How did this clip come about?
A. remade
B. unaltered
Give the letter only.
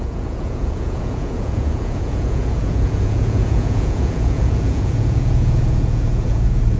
A